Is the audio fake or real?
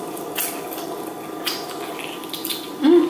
real